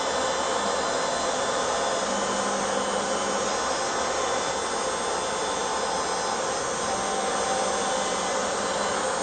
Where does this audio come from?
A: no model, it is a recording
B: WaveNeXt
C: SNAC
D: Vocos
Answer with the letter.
A